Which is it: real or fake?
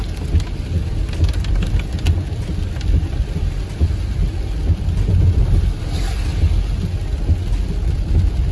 real